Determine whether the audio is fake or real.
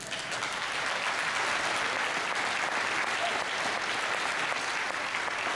real